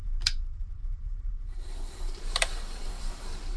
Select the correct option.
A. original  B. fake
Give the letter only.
B